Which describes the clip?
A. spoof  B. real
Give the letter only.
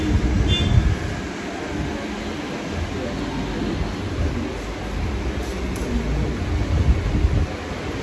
B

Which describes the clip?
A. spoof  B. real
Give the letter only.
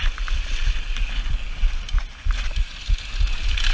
B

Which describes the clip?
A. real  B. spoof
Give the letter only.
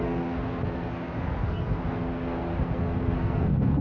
B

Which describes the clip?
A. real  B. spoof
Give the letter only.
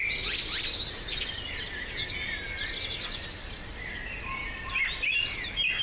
A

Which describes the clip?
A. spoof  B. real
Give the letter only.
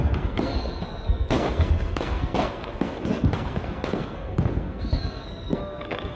A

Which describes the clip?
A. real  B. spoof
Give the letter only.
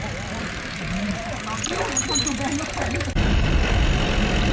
A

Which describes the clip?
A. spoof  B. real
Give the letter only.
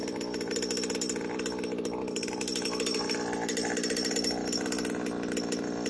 B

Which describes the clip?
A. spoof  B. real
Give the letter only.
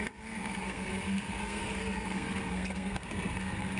A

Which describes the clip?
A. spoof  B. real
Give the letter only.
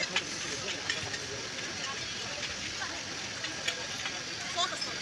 B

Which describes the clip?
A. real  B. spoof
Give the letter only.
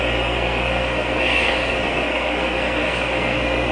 B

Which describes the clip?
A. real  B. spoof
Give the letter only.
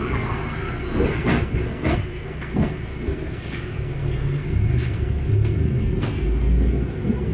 B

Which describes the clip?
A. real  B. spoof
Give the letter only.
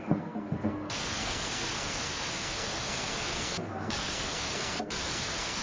B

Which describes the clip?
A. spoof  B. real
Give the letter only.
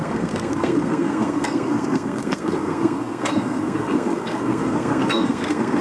A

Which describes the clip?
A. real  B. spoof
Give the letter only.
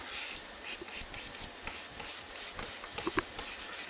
A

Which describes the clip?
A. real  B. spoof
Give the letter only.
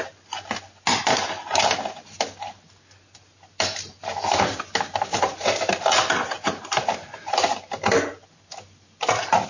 A